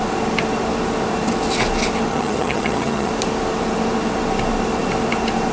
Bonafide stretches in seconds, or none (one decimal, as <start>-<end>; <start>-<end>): 0.0-2.1; 3.1-5.5